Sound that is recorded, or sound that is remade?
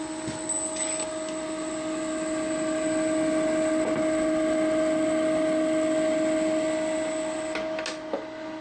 recorded